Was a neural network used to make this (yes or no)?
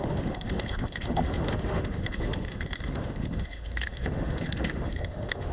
yes